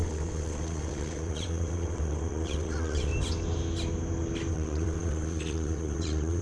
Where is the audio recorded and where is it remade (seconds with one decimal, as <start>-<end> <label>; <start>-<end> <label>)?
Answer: 0.0-3.1 remade; 3.1-4.5 recorded; 4.5-6.4 remade